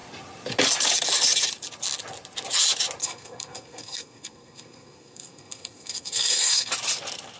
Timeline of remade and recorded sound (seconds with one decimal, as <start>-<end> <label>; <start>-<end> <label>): 0.0-3.0 recorded; 3.0-6.7 remade; 6.7-7.4 recorded